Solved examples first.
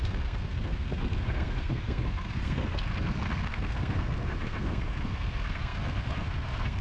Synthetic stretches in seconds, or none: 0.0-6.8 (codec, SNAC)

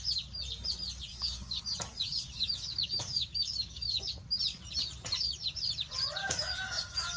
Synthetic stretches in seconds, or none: 1.1-1.6 (codec, DAC); 2.1-4.0; 6.2-7.2

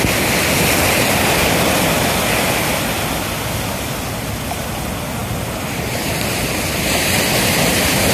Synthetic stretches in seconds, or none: none

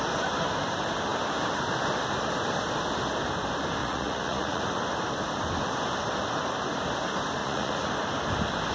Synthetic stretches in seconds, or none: 3.8-4.6 (vocoder, Vocos); 7.4-7.9

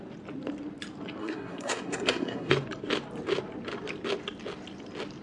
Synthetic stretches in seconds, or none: 1.2-2.5 (codec, SNAC)

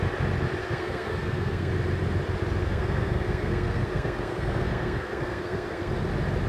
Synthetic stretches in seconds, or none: 0.6-1.7 (codec, SNAC); 2.6-5.9

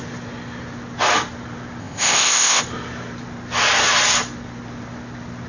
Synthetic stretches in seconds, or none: 1.8-2.6 (codec, ZipCodec)